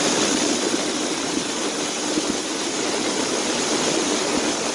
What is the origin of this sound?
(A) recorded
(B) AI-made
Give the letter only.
A